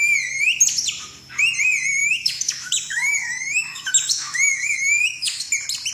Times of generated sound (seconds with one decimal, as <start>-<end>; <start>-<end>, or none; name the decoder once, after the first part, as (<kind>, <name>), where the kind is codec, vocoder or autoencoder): 2.0-5.5 (autoencoder, DAC-VAE)

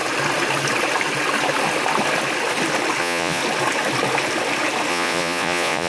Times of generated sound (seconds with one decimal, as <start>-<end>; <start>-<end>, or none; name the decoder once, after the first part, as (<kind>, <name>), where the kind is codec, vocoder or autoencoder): 3.0-3.4 (vocoder, Vocos); 4.9-5.9

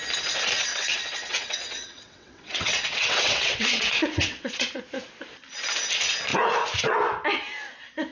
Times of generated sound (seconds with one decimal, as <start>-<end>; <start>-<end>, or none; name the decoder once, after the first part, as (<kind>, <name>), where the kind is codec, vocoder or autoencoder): 0.7-4.7 (vocoder, WaveNeXt)

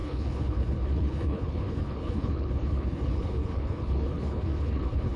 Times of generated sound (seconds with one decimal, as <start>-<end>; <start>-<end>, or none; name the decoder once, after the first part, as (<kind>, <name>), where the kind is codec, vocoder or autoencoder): 0.0-5.2 (codec, HILCodec)